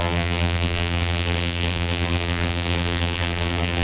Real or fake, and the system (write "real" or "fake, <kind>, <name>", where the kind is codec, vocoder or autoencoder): fake, vocoder, BigVGAN v2